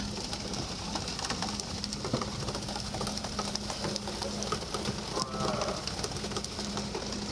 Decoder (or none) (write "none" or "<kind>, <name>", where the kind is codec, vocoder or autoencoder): none